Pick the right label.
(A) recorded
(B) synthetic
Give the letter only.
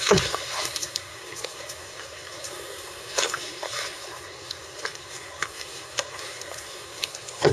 B